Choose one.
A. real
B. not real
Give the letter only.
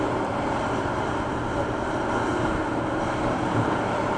B